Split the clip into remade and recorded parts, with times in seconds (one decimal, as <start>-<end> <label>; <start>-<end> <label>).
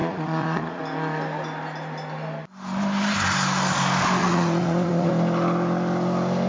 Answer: 0.0-0.8 remade; 0.8-4.2 recorded; 4.2-5.1 remade; 5.1-6.5 recorded